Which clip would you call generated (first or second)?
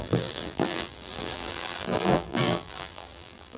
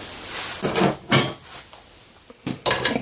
first